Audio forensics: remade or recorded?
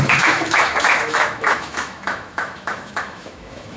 remade